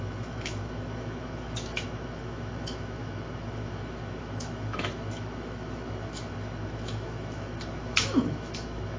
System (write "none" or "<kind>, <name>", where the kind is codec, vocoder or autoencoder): autoencoder, DAC-VAE